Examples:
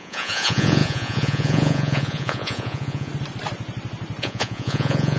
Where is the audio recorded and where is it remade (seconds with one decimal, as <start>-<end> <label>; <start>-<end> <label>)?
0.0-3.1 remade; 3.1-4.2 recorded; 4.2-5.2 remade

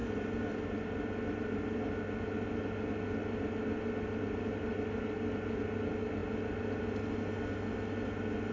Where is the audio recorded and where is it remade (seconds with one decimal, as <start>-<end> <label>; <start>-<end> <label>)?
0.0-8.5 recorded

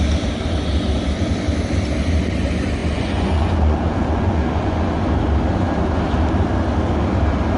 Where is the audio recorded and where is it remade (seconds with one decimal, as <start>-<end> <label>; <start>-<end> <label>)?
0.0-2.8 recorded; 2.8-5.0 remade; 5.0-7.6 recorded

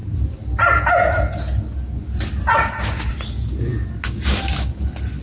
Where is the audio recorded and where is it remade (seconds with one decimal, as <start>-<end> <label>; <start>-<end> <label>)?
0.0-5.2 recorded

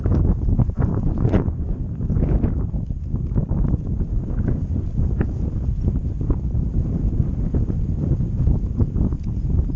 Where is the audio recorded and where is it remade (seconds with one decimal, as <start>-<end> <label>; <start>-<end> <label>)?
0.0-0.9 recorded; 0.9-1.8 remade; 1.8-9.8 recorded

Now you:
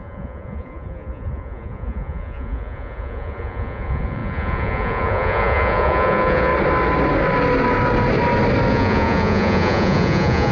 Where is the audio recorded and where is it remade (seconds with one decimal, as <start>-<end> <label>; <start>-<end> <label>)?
0.0-6.5 remade; 6.5-8.7 recorded; 8.7-10.5 remade